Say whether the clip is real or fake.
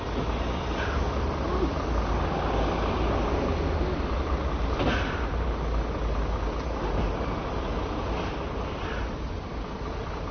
real